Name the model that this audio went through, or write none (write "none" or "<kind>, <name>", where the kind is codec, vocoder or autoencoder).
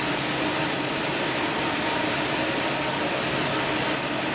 none